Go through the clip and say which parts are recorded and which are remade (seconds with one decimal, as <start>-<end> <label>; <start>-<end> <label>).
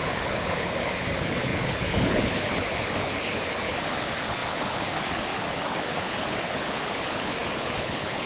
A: 0.0-8.3 remade